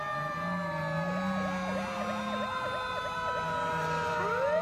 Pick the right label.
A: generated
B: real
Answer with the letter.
B